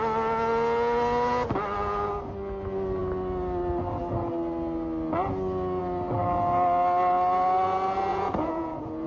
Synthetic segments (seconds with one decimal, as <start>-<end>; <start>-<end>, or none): 8.1-9.1